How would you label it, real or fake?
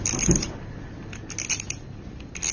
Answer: real